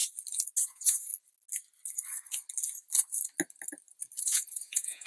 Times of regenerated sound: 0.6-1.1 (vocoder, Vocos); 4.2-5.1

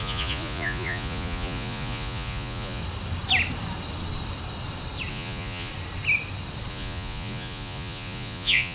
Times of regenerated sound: 0.0-2.8 (vocoder, Vocos); 5.1-5.7; 6.7-8.7

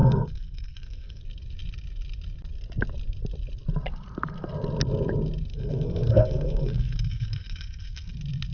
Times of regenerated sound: 0.0-1.2 (codec, SNAC); 5.5-8.1

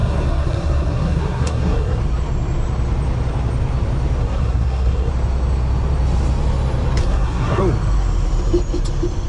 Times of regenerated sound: 0.0-2.0 (codec, SNAC); 4.2-5.1; 7.0-7.6

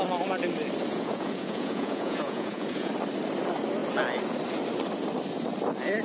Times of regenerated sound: 0.9-2.9 (vocoder, Vocos)